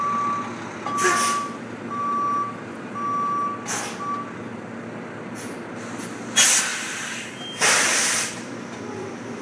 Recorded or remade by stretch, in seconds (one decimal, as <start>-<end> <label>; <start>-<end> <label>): 0.0-1.3 recorded; 1.3-1.8 remade; 1.8-6.7 recorded; 6.7-9.4 remade